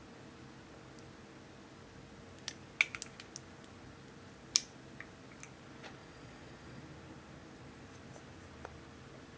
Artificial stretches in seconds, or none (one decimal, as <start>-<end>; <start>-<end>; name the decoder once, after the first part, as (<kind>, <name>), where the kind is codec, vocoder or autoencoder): 6.0-6.8 (vocoder, Vocos)